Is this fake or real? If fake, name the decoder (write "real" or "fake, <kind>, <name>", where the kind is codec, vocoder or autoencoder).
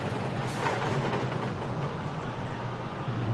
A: fake, vocoder, Vocos